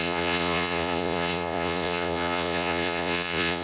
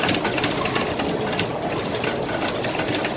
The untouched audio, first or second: second